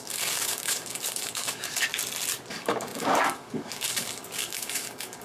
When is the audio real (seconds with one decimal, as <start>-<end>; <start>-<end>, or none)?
1.9-2.5